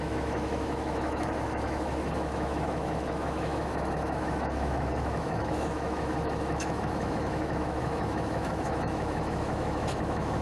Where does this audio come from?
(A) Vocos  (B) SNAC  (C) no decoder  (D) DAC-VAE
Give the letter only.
D